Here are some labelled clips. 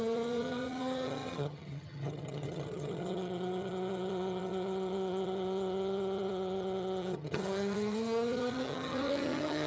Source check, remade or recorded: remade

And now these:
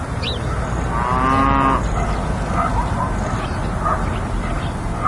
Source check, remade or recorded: recorded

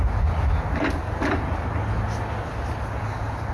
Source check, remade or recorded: recorded